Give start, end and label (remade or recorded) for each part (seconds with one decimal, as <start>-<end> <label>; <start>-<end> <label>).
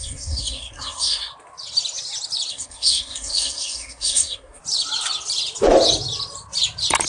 0.0-1.3 remade; 1.3-2.5 recorded; 2.5-4.6 remade; 4.6-7.1 recorded